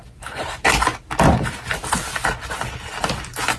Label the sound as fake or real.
real